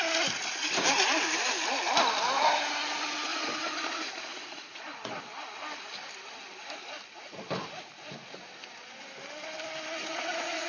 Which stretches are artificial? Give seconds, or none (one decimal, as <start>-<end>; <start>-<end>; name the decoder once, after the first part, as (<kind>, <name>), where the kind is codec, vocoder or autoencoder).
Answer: 3.3-5.2 (vocoder, Vocos); 10.0-10.7